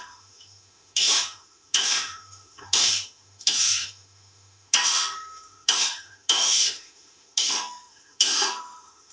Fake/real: fake